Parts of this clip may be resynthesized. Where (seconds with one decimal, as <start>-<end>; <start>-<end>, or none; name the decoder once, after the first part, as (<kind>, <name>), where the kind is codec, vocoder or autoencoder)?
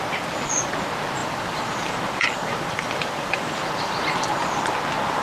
1.2-4.3 (vocoder, BigVGAN v2)